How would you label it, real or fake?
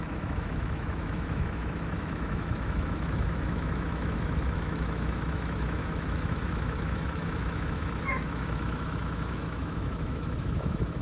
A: fake